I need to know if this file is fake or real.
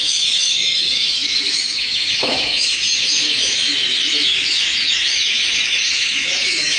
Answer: fake